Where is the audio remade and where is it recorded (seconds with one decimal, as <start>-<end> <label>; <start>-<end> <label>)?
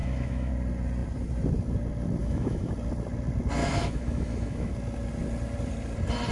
0.0-0.5 remade; 0.5-2.2 recorded; 2.2-2.7 remade; 2.7-3.6 recorded; 3.6-4.7 remade; 4.7-6.3 recorded